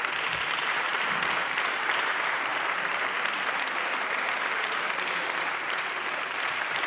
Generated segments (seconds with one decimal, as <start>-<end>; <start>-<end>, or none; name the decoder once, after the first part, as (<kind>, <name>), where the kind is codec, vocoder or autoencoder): 0.0-0.9 (vocoder, BigVGAN v2); 1.6-2.5; 6.2-6.9